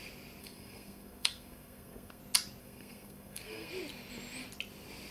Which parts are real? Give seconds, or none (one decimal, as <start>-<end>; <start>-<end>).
0.0-0.4; 2.2-2.6; 3.7-5.1